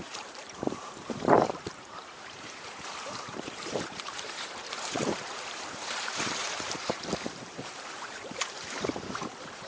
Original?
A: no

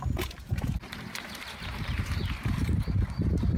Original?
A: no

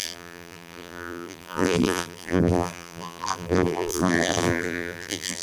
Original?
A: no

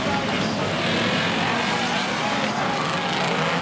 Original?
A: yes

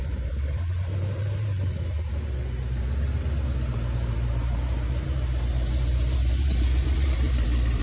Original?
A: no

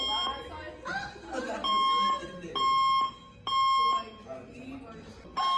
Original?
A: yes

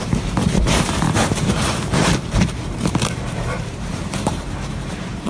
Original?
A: no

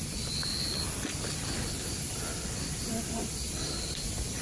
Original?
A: no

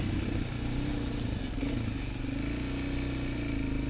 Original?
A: yes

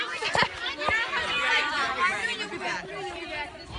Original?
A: yes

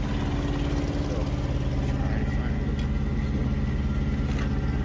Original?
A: yes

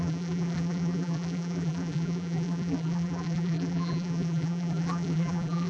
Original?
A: no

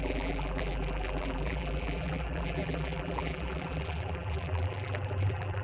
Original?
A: no